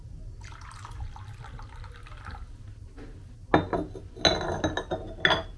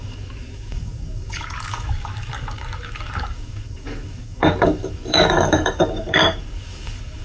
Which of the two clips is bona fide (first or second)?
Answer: first